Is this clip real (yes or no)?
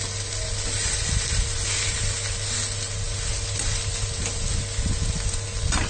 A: yes